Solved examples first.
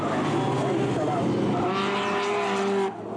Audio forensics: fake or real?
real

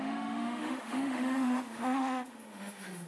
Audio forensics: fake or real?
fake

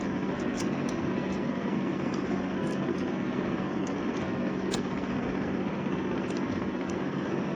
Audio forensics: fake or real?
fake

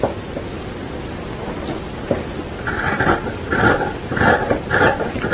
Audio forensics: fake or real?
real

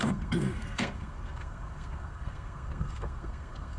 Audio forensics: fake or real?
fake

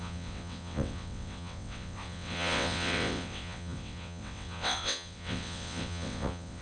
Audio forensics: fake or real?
fake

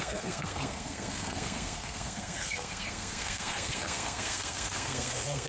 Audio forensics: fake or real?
fake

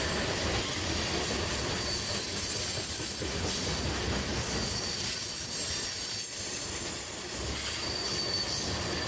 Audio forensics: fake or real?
real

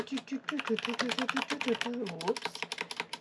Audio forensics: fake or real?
real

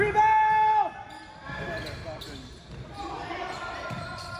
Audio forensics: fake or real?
real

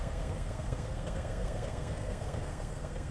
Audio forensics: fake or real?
fake